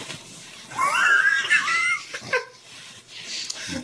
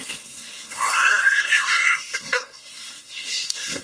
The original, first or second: first